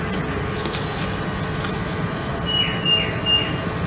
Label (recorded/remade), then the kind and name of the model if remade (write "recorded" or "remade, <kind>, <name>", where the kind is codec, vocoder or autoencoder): recorded